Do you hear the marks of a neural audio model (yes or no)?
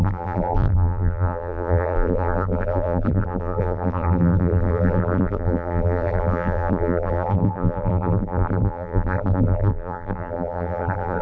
yes